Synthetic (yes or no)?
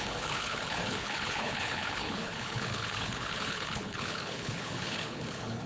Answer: yes